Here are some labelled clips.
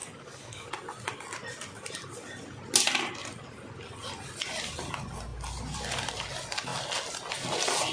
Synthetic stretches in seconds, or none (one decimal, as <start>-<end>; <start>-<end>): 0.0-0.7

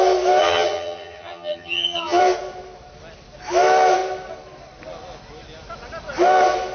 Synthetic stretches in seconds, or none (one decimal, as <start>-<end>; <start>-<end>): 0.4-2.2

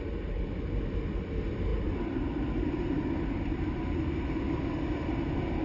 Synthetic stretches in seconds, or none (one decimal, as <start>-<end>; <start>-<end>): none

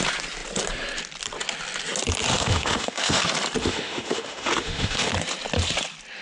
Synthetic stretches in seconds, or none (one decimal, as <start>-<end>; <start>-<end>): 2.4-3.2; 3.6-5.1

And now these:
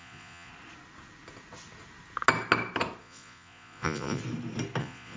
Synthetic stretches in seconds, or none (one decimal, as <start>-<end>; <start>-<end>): 0.0-0.5; 3.0-4.2; 4.8-5.2